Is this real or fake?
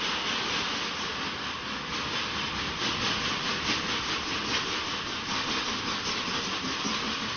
real